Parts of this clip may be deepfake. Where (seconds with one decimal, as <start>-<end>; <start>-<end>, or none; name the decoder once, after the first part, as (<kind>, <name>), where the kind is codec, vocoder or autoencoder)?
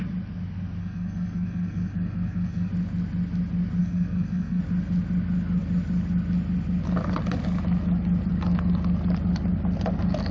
0.8-2.7 (codec, SNAC); 3.8-4.6